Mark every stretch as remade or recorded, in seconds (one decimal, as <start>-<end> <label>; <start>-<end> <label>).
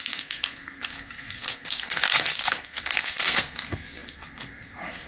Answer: 0.0-5.1 remade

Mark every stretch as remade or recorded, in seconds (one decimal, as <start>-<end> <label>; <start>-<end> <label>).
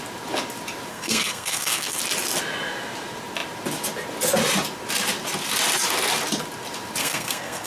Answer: 0.0-0.9 recorded; 0.9-2.0 remade; 2.0-7.0 recorded; 7.0-7.7 remade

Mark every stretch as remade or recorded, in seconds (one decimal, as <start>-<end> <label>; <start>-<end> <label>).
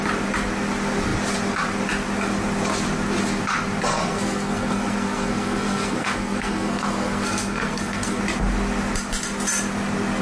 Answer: 0.0-3.9 recorded; 3.9-8.2 remade; 8.2-10.2 recorded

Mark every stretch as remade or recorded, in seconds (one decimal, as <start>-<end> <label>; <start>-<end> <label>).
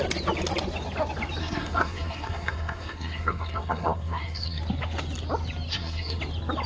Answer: 0.0-1.4 recorded; 1.4-4.6 remade; 4.6-5.7 recorded; 5.7-6.2 remade; 6.2-6.7 recorded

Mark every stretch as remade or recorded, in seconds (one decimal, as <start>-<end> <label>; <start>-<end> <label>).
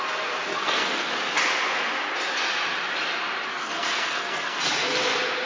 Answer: 0.0-0.5 recorded; 0.5-1.1 remade; 1.1-3.5 recorded; 3.5-4.6 remade; 4.6-5.5 recorded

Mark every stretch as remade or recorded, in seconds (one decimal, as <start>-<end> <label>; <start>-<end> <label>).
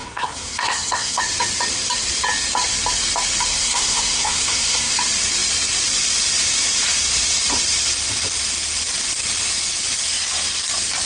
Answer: 0.0-1.2 remade; 1.2-3.5 recorded; 3.5-4.9 remade; 4.9-11.1 recorded